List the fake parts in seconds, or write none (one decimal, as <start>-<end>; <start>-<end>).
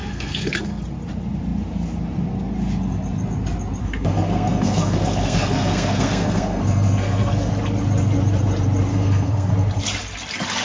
0.0-0.8; 3.8-7.5; 8.9-9.5